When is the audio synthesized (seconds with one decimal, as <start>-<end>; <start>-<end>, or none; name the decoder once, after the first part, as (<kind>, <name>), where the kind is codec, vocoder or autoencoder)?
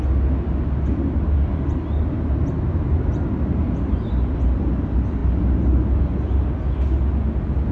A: none